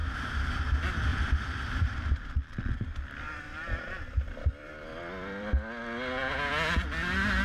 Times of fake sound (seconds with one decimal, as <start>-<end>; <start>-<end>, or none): 1.1-5.5